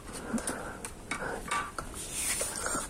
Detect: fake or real real